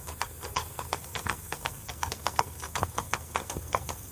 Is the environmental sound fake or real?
fake